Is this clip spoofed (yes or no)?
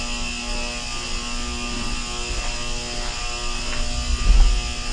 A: no